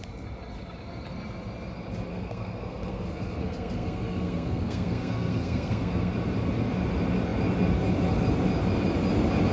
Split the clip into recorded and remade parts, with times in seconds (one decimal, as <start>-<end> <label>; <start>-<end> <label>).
0.0-2.1 recorded; 2.1-6.1 remade; 6.1-9.5 recorded